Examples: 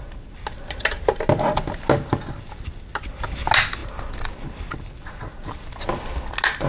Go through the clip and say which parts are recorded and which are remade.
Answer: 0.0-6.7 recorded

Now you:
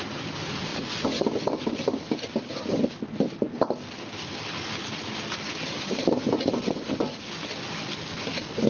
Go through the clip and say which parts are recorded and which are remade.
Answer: 0.0-8.7 recorded

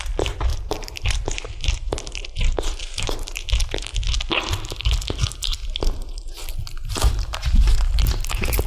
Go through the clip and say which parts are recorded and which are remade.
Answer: 0.0-3.9 remade; 3.9-6.7 recorded; 6.7-8.7 remade

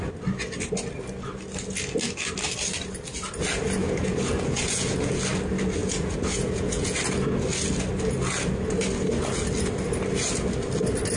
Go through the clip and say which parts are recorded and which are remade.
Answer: 0.0-3.8 recorded; 3.8-5.2 remade; 5.2-5.8 recorded; 5.8-7.0 remade; 7.0-11.2 recorded

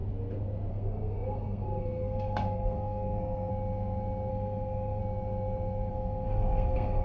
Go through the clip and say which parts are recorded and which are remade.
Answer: 0.0-0.7 recorded; 0.7-3.5 remade; 3.5-4.3 recorded; 4.3-5.0 remade; 5.0-5.9 recorded; 5.9-7.0 remade

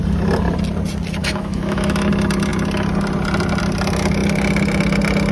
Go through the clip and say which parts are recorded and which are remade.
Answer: 0.0-1.2 recorded; 1.2-2.1 remade; 2.1-5.3 recorded

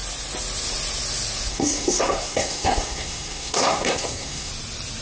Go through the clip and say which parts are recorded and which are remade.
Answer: 0.0-1.5 recorded; 1.5-4.5 remade; 4.5-5.0 recorded